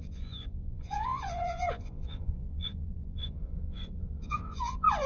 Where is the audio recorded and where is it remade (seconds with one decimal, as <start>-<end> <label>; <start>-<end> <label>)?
0.0-5.1 remade